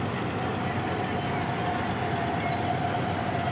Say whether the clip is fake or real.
real